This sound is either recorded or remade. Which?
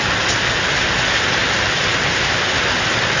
recorded